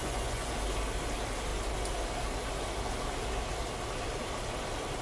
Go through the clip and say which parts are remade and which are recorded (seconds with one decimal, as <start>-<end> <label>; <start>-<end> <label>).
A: 0.0-0.5 remade; 0.5-5.0 recorded

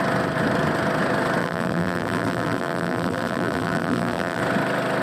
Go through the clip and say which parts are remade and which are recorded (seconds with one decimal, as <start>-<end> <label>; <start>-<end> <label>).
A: 0.0-1.4 recorded; 1.4-4.4 remade; 4.4-5.0 recorded

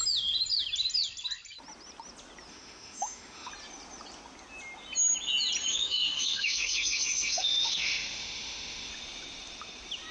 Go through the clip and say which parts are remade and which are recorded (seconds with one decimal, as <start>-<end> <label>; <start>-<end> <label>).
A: 0.0-2.5 recorded; 2.5-3.5 remade; 3.5-5.7 recorded; 5.7-8.9 remade; 8.9-10.1 recorded

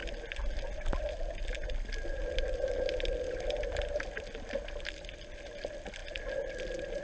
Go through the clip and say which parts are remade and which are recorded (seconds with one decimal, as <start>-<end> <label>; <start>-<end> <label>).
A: 0.0-7.0 recorded

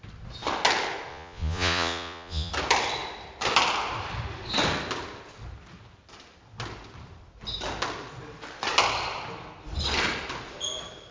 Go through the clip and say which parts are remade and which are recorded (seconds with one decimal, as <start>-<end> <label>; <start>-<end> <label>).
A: 0.0-1.1 recorded; 1.1-2.5 remade; 2.5-11.1 recorded

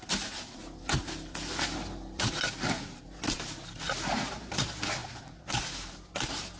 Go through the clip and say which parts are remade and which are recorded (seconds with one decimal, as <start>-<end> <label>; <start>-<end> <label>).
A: 0.0-6.6 recorded

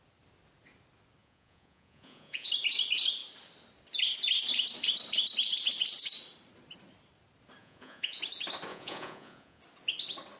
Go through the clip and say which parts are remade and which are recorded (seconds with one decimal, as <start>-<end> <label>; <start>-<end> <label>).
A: 0.0-1.2 recorded; 1.2-2.5 remade; 2.5-7.6 recorded; 7.6-8.2 remade; 8.2-8.7 recorded; 8.7-9.6 remade; 9.6-10.4 recorded